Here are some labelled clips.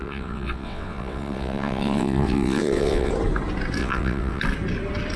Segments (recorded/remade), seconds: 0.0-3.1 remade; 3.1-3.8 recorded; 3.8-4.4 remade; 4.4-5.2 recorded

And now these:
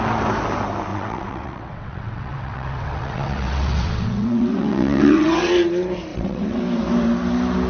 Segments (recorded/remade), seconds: 0.0-0.9 recorded; 0.9-5.5 remade; 5.5-6.1 recorded; 6.1-6.6 remade; 6.6-7.7 recorded

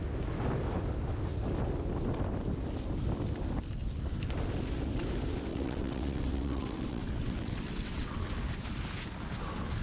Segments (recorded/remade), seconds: 0.0-5.5 recorded; 5.5-8.3 remade; 8.3-9.8 recorded

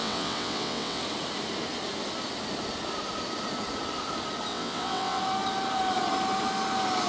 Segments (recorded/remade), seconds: 0.0-1.0 remade; 1.0-4.5 recorded; 4.5-5.2 remade; 5.2-7.1 recorded

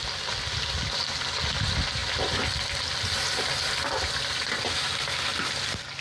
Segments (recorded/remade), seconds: 0.0-6.0 recorded

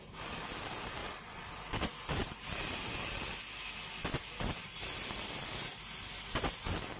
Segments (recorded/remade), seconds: 0.0-1.0 recorded; 1.0-1.5 remade; 1.5-7.0 recorded

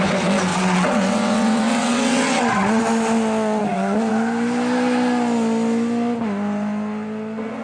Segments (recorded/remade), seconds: 0.0-0.5 recorded; 0.5-2.8 remade; 2.8-7.6 recorded

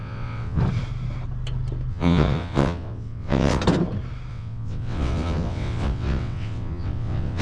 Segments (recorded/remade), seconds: 0.0-0.6 remade; 0.6-1.9 recorded; 1.9-3.6 remade; 3.6-4.3 recorded; 4.3-7.4 remade